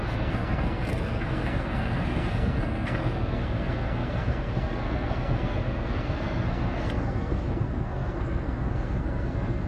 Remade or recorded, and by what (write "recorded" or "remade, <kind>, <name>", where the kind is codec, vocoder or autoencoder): remade, codec, SNAC